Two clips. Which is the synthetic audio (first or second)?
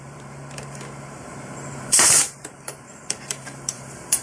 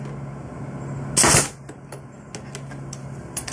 first